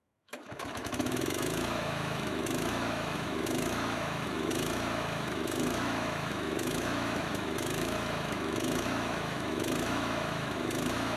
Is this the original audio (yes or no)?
no